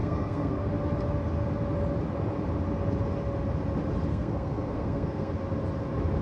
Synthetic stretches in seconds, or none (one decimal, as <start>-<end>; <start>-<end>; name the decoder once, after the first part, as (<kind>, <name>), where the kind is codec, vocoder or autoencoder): 0.0-0.7 (codec, SNAC); 4.1-5.3